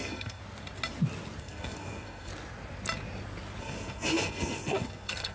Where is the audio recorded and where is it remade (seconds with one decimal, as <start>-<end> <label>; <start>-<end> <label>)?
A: 0.0-0.4 remade; 0.4-1.4 recorded; 1.4-2.3 remade; 2.3-3.6 recorded; 3.6-5.3 remade

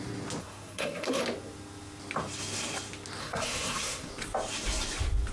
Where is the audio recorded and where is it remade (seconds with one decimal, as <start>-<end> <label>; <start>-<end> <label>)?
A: 0.0-0.4 recorded; 0.4-1.2 remade; 1.2-3.2 recorded; 3.2-4.1 remade; 4.1-5.3 recorded

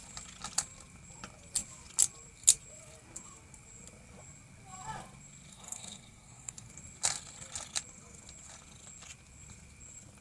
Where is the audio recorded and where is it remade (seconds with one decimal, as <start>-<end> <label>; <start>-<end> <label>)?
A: 0.0-5.5 recorded; 5.5-6.7 remade; 6.7-10.2 recorded